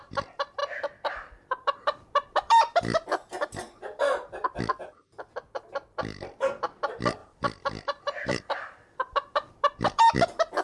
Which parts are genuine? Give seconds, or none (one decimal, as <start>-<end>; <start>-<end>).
3.2-5.6